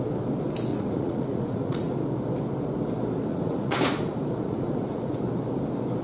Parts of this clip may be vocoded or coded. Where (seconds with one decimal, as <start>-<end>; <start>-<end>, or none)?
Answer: 0.7-1.9; 3.3-5.2